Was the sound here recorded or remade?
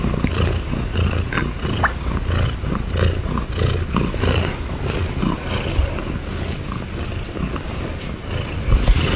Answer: recorded